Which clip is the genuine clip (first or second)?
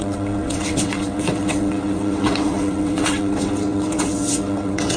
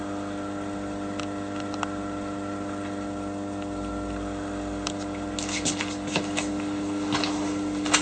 second